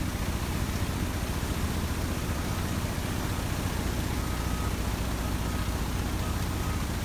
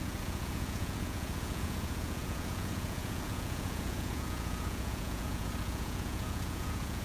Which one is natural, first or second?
first